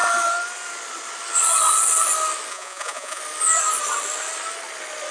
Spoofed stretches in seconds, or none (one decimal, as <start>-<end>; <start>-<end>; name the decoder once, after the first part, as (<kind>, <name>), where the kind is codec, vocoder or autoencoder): 2.5-3.2 (vocoder, Vocos)